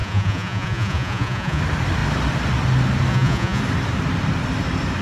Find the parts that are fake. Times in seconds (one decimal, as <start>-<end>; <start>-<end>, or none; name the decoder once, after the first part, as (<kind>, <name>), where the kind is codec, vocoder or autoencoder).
0.0-1.6 (vocoder, Vocos); 3.1-3.6